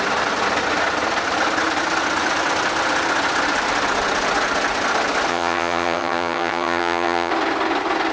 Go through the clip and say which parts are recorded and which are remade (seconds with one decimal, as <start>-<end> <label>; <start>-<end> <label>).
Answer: 0.0-5.3 recorded; 5.3-7.3 remade; 7.3-8.1 recorded